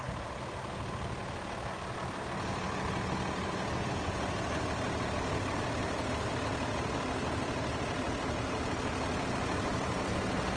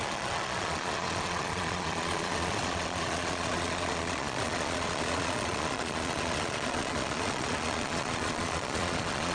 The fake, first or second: second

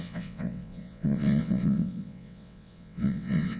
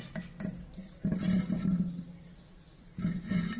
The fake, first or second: first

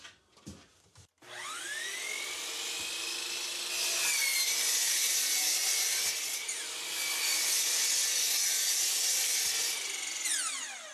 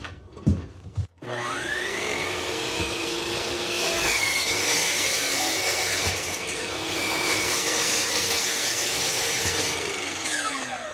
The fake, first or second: second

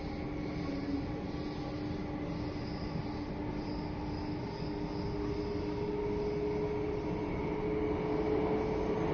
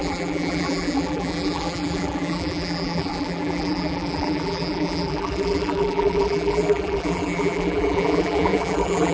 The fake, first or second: second